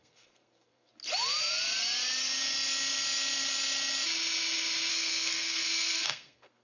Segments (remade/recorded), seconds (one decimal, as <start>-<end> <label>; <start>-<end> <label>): 0.0-0.9 remade; 0.9-4.9 recorded; 4.9-6.6 remade